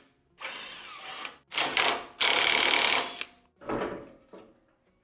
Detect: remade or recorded recorded